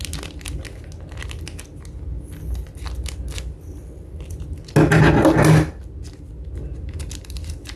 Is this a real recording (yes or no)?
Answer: yes